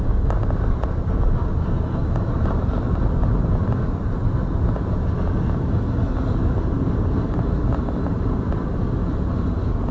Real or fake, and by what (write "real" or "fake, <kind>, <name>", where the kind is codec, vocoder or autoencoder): real